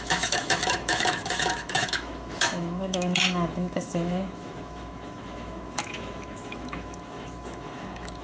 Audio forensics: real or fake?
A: fake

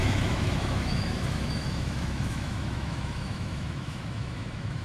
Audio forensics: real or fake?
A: fake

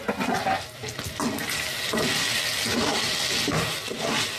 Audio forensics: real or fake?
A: real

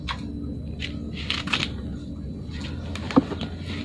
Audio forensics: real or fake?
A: real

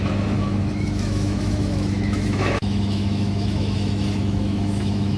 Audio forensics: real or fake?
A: fake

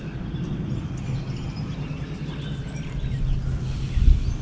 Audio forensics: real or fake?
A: real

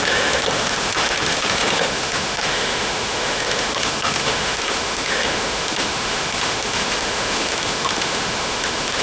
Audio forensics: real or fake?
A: fake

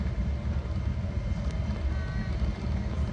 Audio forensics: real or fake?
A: real